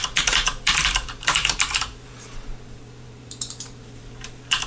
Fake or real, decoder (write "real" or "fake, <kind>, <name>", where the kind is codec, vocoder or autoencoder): fake, vocoder, BigVGAN v2